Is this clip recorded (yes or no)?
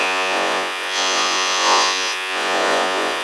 no